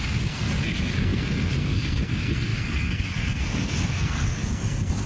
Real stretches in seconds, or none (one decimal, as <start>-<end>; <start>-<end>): none